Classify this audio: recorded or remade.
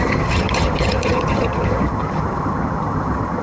remade